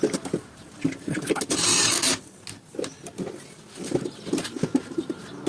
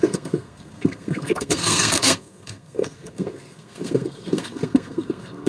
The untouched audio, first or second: first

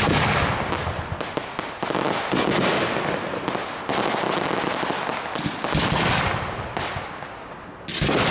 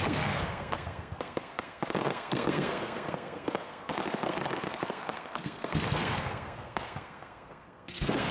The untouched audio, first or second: first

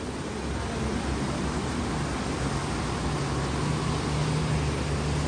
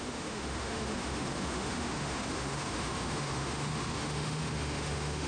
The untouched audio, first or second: first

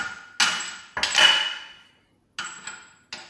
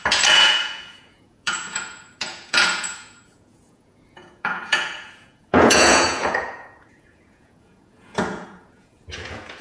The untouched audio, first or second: first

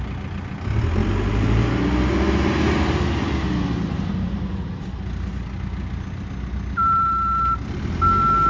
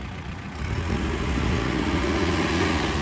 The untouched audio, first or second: first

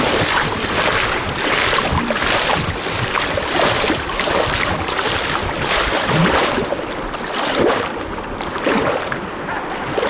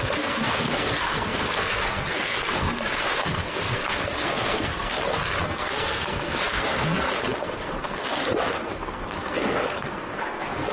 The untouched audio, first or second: first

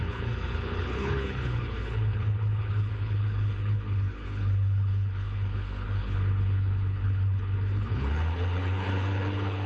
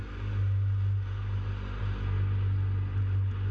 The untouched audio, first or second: second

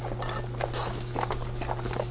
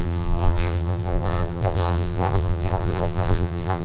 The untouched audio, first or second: first